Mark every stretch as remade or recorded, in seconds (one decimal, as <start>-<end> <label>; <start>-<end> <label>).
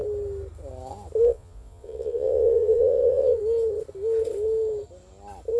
0.0-1.3 recorded; 1.3-3.4 remade; 3.4-5.6 recorded